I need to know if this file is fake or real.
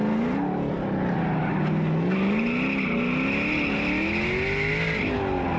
real